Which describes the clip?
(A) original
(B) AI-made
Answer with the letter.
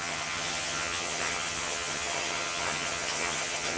B